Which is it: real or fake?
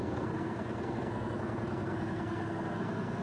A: fake